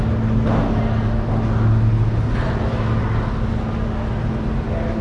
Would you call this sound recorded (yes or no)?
yes